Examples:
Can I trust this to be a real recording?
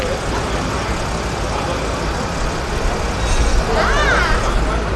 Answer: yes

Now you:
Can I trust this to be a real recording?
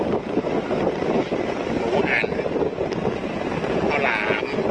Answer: yes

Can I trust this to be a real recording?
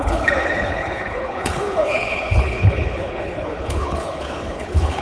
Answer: no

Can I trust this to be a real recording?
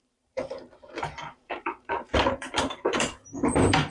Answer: no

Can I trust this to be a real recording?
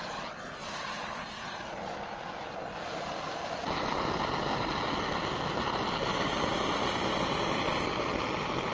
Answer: yes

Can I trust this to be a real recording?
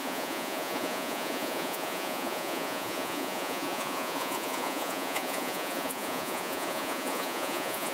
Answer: no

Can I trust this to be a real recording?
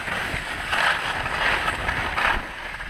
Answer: yes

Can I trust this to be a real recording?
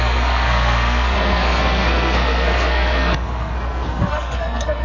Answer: no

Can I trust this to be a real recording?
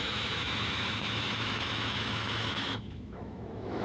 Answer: no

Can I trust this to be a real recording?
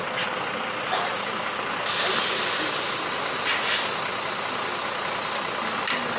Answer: yes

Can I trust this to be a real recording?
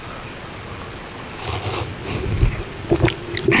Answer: yes